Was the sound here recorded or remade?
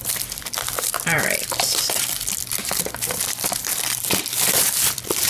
remade